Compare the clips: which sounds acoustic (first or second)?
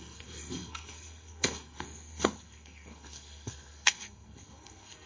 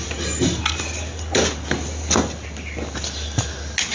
second